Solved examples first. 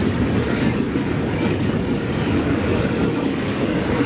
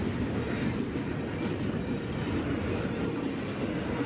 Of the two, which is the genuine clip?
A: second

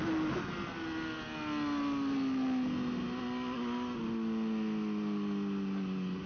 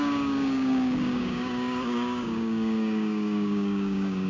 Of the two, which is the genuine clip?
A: first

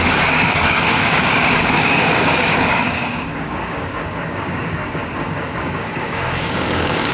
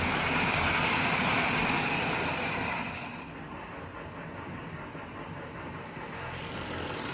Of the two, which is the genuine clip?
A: second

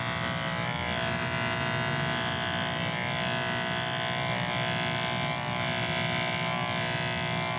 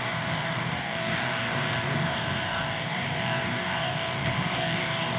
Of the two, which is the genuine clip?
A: first